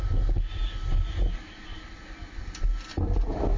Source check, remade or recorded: recorded